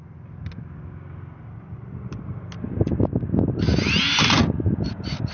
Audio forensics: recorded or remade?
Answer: recorded